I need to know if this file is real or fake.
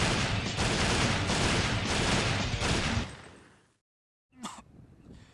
fake